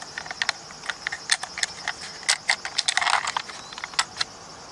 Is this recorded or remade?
recorded